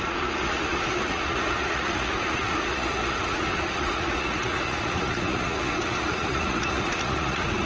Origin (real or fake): fake